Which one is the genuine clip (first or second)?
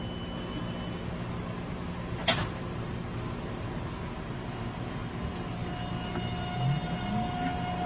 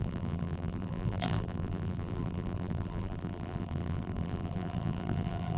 first